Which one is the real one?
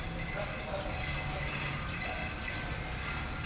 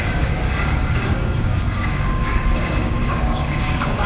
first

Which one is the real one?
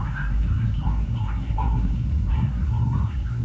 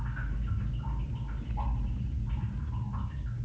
second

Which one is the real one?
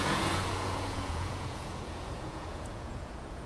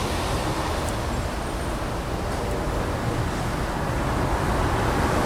second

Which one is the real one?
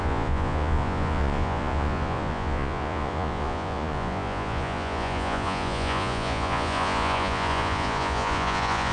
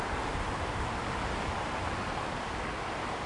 second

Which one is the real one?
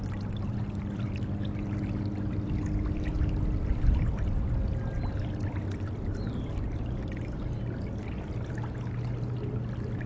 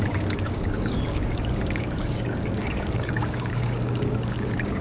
first